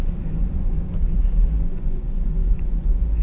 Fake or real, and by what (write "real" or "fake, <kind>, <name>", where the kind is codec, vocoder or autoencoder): fake, vocoder, Vocos